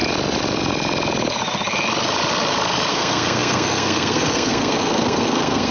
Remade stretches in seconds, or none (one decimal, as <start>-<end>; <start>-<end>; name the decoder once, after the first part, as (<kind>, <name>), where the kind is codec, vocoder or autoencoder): 2.9-5.7 (codec, SNAC)